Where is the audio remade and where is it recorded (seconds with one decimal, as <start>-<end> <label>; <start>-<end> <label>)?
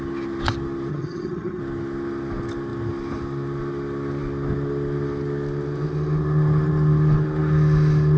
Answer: 0.0-0.9 recorded; 0.9-1.6 remade; 1.6-8.2 recorded